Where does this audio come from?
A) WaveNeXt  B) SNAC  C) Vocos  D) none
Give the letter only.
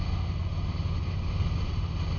D